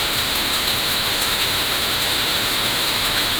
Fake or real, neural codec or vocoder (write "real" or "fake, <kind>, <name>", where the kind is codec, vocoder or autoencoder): fake, autoencoder, DAC-VAE